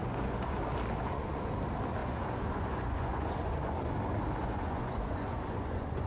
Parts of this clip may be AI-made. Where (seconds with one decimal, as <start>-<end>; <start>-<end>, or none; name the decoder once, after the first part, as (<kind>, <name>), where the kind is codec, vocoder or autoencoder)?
0.0-0.6 (vocoder, Vocos); 1.0-1.5; 2.0-3.9; 4.4-6.1